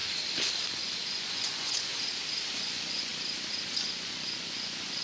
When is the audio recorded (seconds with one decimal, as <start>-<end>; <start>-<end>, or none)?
0.0-0.7; 1.9-2.6; 3.1-3.7